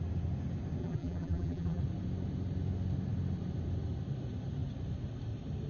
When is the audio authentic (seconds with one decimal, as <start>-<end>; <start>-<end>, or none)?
0.0-0.8; 1.8-5.7